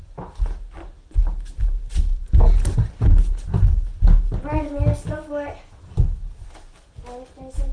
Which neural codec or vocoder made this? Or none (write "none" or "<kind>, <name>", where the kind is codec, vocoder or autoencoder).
none